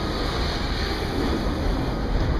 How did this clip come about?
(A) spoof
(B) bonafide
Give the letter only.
B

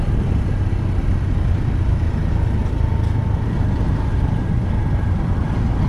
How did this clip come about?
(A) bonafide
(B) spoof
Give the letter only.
A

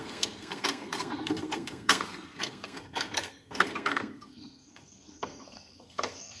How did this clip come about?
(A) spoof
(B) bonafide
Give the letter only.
A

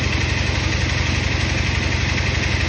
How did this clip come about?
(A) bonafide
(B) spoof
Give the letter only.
A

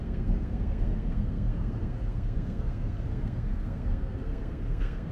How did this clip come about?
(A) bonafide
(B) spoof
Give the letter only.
B